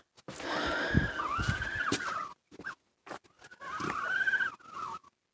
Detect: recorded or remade recorded